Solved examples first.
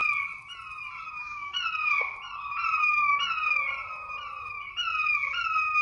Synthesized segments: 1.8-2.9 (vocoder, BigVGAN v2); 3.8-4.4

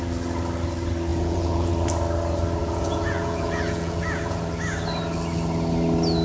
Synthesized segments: 1.1-1.7 (vocoder, Vocos); 2.6-4.4